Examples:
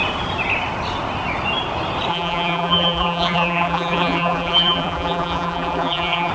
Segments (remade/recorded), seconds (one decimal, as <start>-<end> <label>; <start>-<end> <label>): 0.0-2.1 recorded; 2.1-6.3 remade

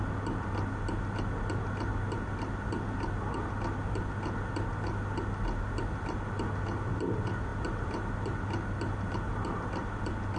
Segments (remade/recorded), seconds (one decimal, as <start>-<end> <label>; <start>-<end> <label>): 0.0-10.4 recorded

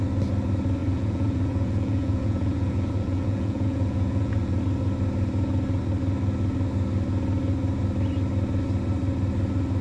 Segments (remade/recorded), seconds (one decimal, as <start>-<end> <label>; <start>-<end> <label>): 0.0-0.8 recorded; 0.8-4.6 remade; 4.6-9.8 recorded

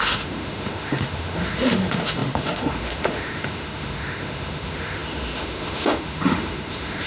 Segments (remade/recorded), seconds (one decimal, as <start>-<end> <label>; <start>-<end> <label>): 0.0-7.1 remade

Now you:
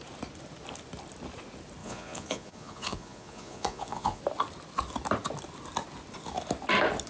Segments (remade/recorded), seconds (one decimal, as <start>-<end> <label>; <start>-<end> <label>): 0.0-1.8 recorded; 1.8-4.2 remade; 4.2-7.1 recorded

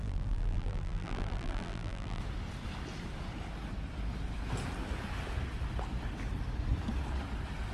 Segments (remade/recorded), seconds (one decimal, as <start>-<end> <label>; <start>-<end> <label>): 0.0-2.2 remade; 2.2-7.7 recorded

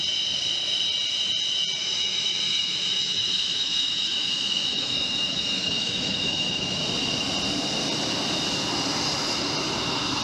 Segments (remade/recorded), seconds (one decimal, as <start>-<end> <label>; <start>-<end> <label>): 0.0-1.8 recorded; 1.8-6.8 remade; 6.8-10.2 recorded

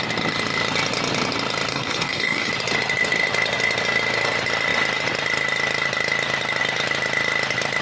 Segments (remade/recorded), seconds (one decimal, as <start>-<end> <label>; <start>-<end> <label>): 0.0-1.7 recorded; 1.7-2.5 remade; 2.5-7.8 recorded